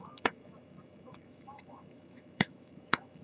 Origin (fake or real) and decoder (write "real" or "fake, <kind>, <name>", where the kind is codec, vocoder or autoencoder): fake, autoencoder, DAC-VAE